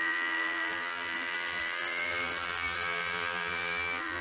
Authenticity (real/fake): fake